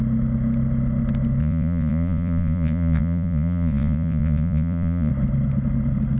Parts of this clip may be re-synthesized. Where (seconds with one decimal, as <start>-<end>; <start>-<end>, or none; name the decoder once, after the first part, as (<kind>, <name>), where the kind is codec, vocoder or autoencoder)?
1.4-5.1 (vocoder, Vocos)